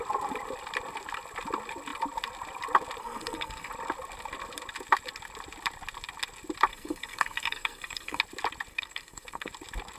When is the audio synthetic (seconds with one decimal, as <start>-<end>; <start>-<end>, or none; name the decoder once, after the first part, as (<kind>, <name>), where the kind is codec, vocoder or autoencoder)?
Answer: 3.0-3.7 (codec, SNAC); 6.7-8.2; 8.7-9.5